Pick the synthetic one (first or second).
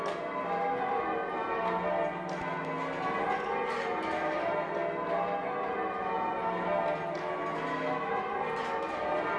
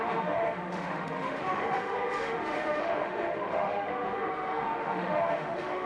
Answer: second